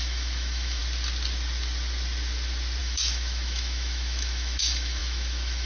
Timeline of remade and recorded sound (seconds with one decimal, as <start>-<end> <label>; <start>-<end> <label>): 0.0-0.8 remade; 0.8-2.8 recorded; 2.8-5.7 remade